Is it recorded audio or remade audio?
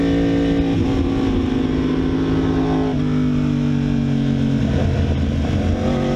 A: recorded